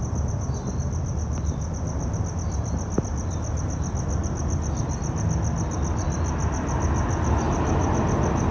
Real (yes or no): yes